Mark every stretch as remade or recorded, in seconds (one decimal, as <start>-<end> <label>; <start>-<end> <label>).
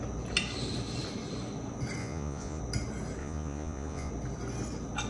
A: 0.0-2.0 recorded; 2.0-2.6 remade; 2.6-3.2 recorded; 3.2-4.1 remade; 4.1-5.1 recorded